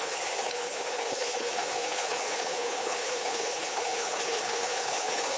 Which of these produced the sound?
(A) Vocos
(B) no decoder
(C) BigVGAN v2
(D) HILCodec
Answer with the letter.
D